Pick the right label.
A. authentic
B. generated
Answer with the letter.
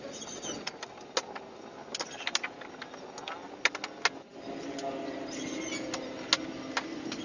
A